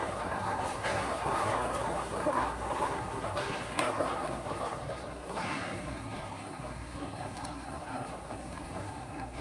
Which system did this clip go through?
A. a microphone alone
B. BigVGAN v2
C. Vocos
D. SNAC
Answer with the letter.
D